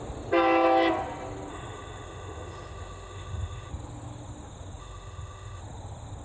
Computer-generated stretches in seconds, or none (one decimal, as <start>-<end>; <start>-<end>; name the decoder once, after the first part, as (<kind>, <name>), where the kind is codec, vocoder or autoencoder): 1.5-3.7 (autoencoder, DAC-VAE); 4.8-5.6